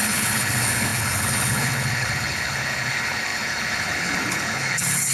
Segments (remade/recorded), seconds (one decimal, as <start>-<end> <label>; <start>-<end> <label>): 0.0-5.1 remade